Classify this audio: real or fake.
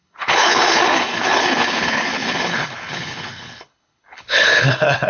fake